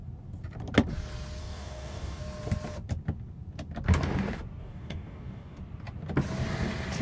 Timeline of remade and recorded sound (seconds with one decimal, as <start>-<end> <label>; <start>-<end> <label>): 0.0-1.4 recorded; 1.4-2.2 remade; 2.2-4.6 recorded; 4.6-5.6 remade; 5.6-7.0 recorded

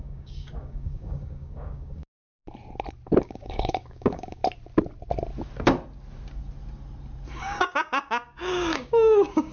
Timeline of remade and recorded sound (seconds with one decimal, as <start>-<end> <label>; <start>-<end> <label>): 0.0-2.4 remade; 2.4-3.2 recorded; 3.2-4.4 remade; 4.4-7.4 recorded; 7.4-9.5 remade

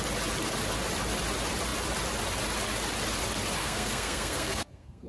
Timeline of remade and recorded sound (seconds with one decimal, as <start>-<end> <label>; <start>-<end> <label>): 0.0-3.6 recorded; 3.6-5.1 remade

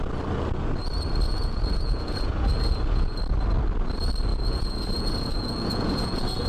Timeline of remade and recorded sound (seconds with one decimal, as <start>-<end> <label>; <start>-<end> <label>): 0.0-1.3 recorded; 1.3-3.2 remade; 3.2-4.3 recorded; 4.3-6.5 remade

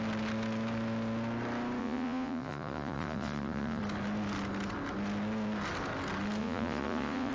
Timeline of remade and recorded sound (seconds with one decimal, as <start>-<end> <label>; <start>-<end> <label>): 0.0-1.8 recorded; 1.8-3.8 remade; 3.8-6.4 recorded; 6.4-7.3 remade

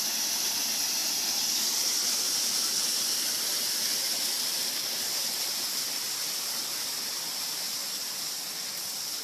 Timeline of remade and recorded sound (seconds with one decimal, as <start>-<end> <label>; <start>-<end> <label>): 0.0-9.2 recorded

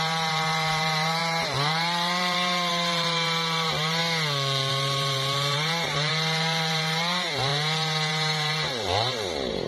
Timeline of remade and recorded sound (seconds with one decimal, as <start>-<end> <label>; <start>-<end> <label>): 0.0-4.0 remade; 4.0-4.7 recorded; 4.7-9.7 remade

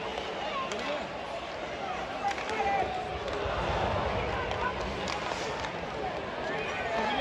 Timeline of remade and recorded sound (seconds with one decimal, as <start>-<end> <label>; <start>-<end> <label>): 0.0-7.2 recorded